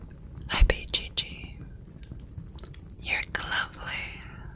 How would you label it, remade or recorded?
recorded